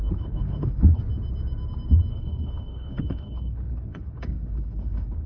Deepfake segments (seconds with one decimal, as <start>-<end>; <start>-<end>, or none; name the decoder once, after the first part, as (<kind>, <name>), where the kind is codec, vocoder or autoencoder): 0.0-1.0 (codec, HILCodec); 2.1-5.3

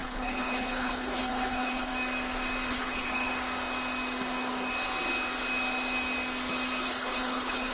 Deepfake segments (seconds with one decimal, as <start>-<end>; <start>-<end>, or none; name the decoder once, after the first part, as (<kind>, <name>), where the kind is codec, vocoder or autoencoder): 0.0-1.9 (codec, HILCodec); 2.7-3.3; 6.8-7.7

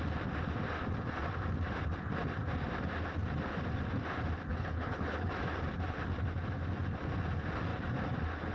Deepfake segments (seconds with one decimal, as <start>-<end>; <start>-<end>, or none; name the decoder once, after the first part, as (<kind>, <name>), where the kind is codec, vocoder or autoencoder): 4.5-5.3 (codec, HILCodec)

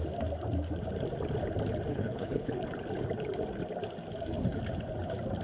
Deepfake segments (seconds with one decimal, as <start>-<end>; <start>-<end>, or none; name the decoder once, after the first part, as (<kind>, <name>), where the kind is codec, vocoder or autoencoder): 1.9-2.6 (codec, HILCodec)

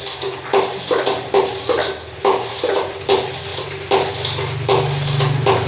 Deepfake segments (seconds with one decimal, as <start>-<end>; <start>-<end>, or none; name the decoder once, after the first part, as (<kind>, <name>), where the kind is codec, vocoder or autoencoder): none